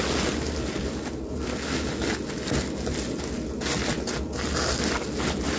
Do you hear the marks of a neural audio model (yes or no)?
no